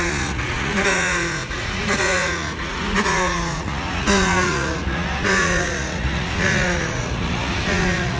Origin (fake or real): fake